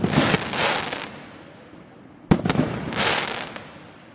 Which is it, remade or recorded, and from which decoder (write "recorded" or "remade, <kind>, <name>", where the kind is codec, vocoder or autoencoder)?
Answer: recorded